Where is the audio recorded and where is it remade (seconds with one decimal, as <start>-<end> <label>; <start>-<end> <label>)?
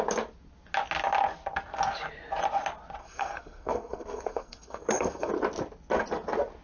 0.0-3.0 recorded; 3.0-5.3 remade; 5.3-6.6 recorded